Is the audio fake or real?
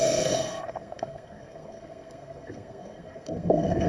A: fake